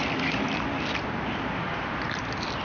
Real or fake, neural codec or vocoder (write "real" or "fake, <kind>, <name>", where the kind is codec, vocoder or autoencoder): real